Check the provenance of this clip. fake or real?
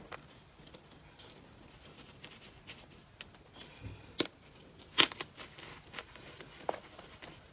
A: real